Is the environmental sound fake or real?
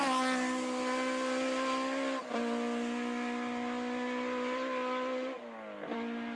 real